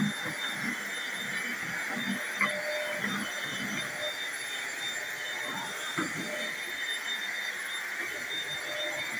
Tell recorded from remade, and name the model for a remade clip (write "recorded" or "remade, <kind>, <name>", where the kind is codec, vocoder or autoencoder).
recorded